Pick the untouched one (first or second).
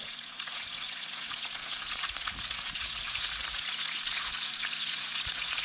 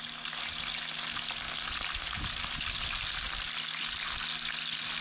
second